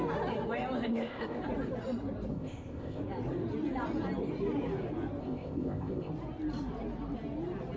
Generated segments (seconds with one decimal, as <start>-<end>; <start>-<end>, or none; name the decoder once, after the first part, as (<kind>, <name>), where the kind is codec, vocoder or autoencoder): 0.9-1.4 (codec, ZipCodec); 2.3-3.0; 5.2-6.1